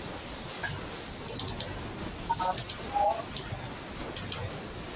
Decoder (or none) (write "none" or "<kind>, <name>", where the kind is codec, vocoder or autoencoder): none